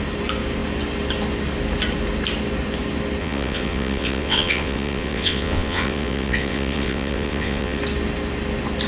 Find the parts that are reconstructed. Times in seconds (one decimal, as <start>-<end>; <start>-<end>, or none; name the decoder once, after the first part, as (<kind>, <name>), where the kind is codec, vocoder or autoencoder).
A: 3.2-7.8 (vocoder, WaveNeXt)